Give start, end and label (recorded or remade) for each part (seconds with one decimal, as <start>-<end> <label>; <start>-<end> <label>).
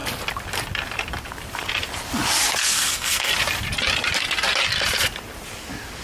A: 0.0-2.6 recorded; 2.6-3.3 remade; 3.3-6.0 recorded